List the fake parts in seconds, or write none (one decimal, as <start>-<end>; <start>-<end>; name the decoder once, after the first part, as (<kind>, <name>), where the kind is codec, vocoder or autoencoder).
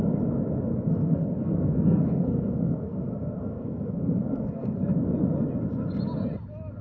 0.7-4.8 (codec, SNAC)